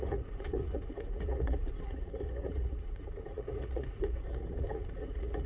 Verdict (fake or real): fake